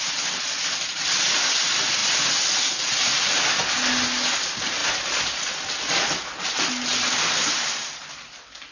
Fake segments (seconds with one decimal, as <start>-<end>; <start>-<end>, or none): none